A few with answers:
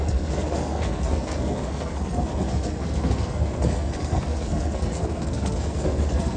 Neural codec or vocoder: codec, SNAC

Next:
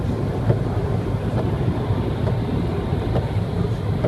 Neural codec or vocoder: none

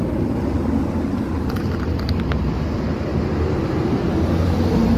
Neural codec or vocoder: none